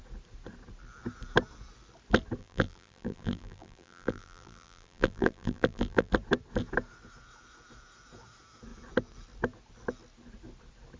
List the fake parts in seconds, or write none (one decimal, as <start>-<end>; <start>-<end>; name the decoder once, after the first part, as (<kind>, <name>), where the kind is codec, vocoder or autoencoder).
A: 2.4-6.1 (vocoder, BigVGAN v2)